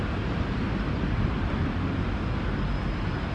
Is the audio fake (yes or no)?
no